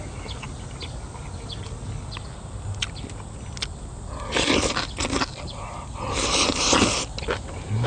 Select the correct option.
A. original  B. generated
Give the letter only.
A